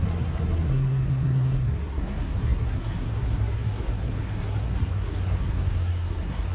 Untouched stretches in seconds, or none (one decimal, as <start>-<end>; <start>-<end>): none